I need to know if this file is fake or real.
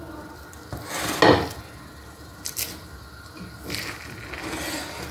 real